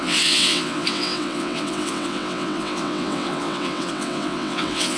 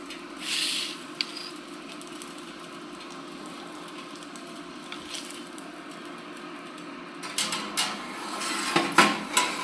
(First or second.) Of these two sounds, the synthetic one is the first